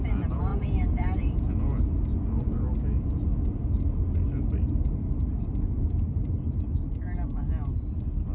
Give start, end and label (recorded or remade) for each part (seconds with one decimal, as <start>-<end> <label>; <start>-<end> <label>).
0.0-0.5 recorded; 0.5-1.5 remade; 1.5-8.3 recorded